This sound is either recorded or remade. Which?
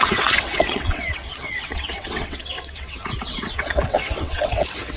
remade